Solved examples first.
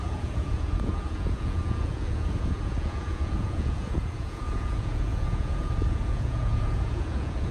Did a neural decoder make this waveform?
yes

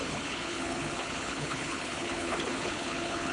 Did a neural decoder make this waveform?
yes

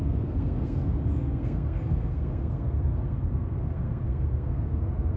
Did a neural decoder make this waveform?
yes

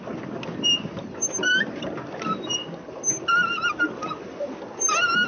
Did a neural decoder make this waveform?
no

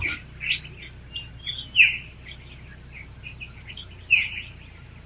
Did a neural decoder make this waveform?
no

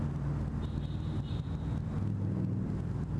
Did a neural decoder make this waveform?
no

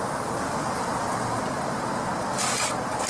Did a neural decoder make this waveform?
no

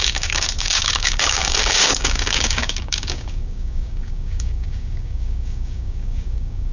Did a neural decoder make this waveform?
yes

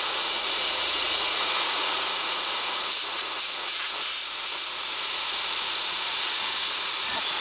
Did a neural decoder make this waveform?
yes